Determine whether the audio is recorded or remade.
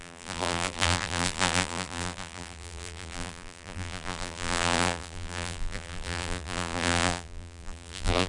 remade